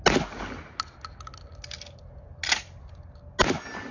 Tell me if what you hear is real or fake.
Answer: real